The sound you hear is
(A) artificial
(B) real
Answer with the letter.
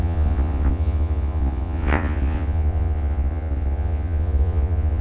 A